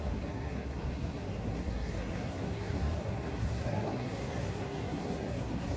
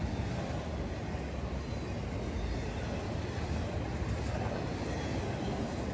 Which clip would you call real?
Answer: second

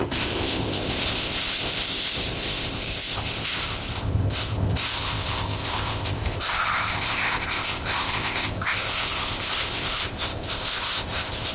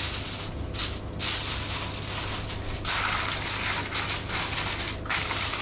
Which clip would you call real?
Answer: second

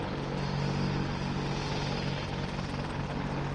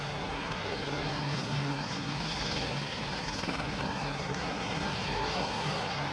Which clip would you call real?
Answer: first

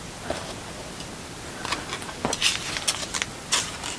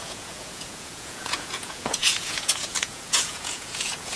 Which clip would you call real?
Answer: first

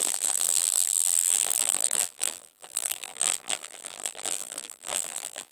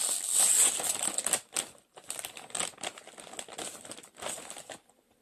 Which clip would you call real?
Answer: second